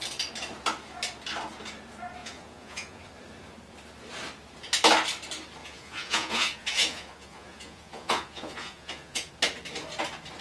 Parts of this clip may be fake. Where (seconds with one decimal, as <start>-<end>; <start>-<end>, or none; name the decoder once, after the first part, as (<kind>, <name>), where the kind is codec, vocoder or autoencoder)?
2.2-3.0 (vocoder, Vocos); 5.6-9.3